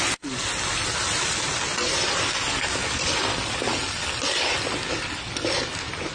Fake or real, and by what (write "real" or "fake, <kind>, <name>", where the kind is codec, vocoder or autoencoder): real